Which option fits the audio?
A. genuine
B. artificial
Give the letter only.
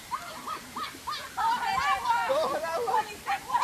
B